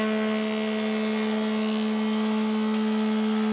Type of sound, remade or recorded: recorded